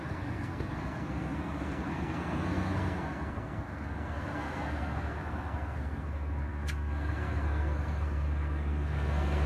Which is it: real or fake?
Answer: fake